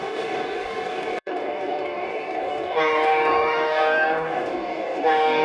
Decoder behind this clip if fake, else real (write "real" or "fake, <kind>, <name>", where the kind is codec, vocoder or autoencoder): fake, codec, DAC